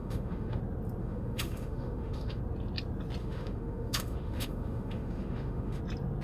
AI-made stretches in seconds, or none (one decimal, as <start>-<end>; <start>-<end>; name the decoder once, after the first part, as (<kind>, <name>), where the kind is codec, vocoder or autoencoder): 0.0-0.6 (autoencoder, DAC-VAE); 1.0-2.4; 3.2-5.8